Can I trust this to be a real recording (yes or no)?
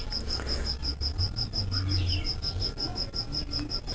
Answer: yes